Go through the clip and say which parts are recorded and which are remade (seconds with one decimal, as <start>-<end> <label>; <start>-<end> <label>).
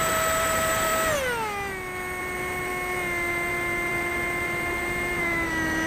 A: 0.0-0.9 remade; 0.9-2.2 recorded; 2.2-2.7 remade; 2.7-3.5 recorded; 3.5-5.9 remade